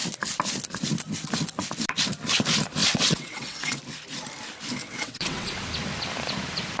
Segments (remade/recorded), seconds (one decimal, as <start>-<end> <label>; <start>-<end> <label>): 0.0-2.8 recorded; 2.8-3.8 remade; 3.8-4.8 recorded; 4.8-5.5 remade; 5.5-6.8 recorded